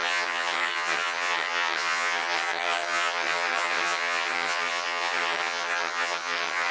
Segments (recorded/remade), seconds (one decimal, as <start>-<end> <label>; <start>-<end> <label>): 0.0-6.7 remade